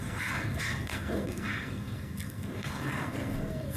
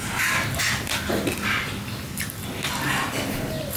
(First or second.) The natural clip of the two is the second